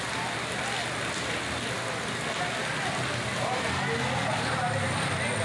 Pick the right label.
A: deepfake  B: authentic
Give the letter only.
B